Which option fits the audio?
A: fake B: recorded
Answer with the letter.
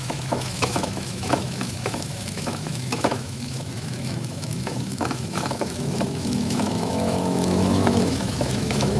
A